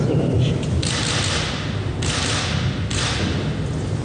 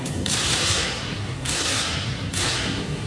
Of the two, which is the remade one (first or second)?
second